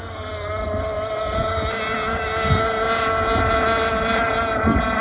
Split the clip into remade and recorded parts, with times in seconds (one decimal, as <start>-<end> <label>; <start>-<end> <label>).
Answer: 0.0-5.0 recorded